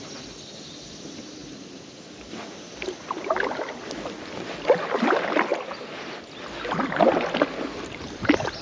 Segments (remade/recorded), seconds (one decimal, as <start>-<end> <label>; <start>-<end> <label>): 0.0-8.6 recorded